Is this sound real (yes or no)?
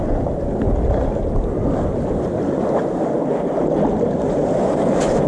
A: yes